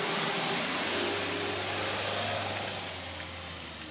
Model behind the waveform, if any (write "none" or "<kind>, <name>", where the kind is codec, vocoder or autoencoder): none